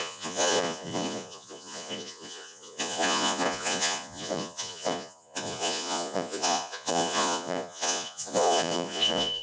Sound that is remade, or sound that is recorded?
remade